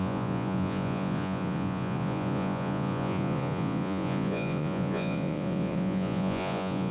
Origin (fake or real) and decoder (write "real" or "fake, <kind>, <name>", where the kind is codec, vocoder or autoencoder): fake, vocoder, Vocos